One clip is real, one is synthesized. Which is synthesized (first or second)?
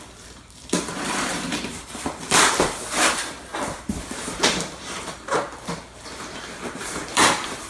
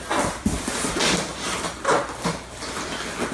first